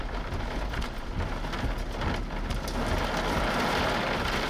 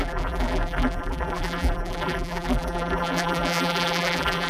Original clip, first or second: first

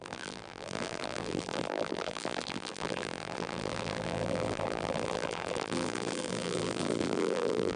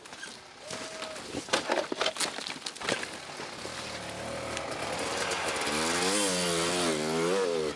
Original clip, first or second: second